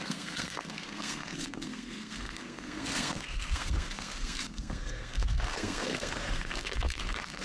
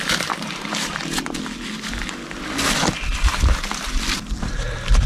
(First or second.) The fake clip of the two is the first